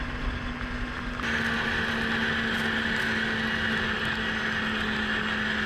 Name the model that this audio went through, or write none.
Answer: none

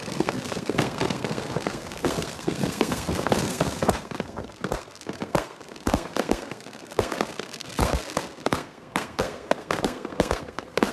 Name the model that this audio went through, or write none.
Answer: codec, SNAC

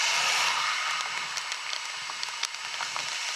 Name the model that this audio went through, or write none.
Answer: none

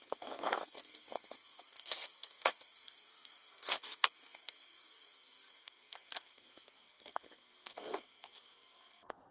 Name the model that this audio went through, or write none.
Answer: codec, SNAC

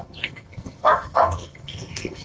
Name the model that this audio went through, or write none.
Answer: codec, SNAC